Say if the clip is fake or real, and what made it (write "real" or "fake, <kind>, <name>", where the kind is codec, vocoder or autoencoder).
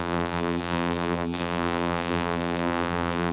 fake, vocoder, BigVGAN v2